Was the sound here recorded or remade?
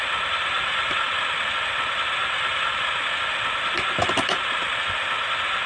recorded